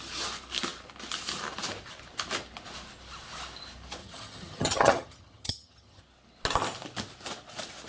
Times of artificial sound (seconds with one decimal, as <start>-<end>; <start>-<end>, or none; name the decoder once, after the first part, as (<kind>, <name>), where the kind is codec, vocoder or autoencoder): 4.0-6.0 (vocoder, HiFi-GAN)